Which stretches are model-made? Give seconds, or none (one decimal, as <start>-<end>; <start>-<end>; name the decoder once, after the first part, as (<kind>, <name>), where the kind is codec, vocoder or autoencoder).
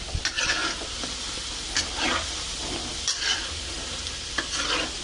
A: none